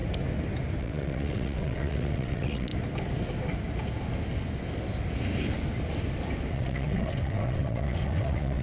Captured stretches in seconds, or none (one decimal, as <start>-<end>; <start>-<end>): 0.0-0.8; 2.7-6.5

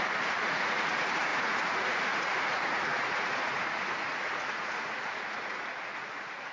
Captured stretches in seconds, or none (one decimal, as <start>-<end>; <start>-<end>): none